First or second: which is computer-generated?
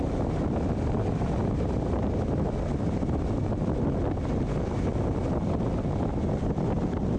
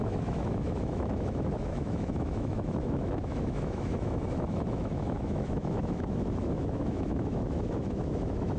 second